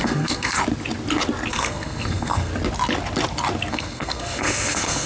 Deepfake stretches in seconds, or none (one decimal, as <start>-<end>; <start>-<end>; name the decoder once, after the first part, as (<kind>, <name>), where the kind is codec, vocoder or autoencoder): 0.0-0.6 (codec, SNAC); 1.5-2.5; 3.7-5.1